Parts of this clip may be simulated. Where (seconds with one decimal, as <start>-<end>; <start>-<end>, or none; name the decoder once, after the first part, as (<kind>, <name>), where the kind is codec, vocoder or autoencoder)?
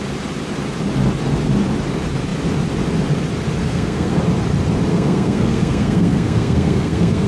3.6-4.2 (codec, SNAC); 4.9-7.3